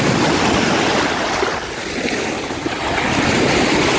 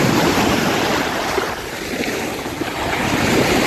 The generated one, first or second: second